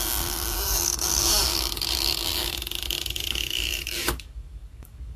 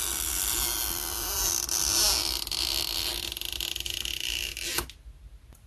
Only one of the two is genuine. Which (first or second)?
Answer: second